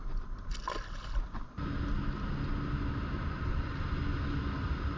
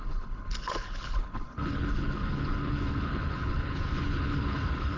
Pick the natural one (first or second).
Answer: first